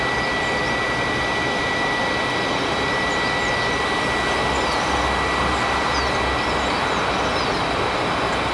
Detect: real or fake real